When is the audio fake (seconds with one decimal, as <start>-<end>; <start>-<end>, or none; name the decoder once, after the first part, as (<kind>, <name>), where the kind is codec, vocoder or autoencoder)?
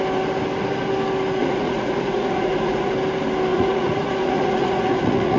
1.4-2.9 (vocoder, Vocos); 3.5-5.4